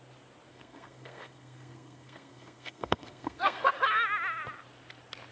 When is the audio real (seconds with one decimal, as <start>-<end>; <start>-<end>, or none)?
0.0-0.5; 3.7-5.3